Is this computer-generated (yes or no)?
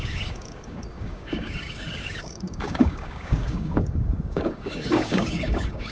yes